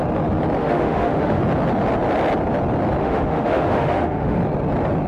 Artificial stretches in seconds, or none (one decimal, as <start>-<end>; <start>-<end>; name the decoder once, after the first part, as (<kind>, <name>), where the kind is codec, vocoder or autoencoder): 0.6-1.4 (autoencoder, DAC-VAE); 3.0-4.4

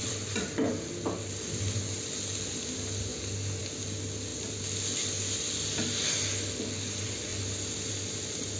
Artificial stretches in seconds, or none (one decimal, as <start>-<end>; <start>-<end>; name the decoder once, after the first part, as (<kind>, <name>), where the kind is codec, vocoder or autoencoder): none

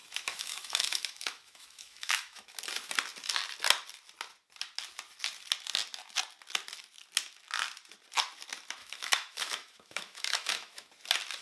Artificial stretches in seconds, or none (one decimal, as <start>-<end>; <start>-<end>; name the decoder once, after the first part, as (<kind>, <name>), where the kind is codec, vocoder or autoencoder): 0.0-2.6 (autoencoder, DAC-VAE); 8.8-10.9